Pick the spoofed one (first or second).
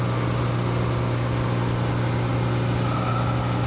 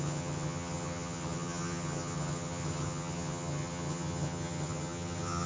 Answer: second